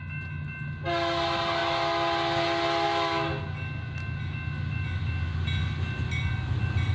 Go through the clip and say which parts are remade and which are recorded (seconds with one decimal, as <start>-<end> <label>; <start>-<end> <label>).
0.0-6.9 recorded